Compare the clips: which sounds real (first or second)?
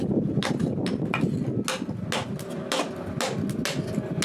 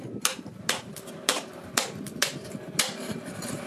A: first